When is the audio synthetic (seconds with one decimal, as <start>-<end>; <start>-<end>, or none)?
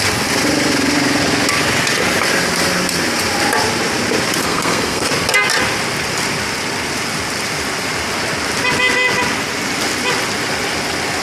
4.4-5.1